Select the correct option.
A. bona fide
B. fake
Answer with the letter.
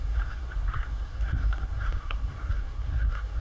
B